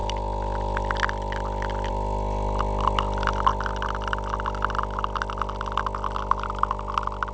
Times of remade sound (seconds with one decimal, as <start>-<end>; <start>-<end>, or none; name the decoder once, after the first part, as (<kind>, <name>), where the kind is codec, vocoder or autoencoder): none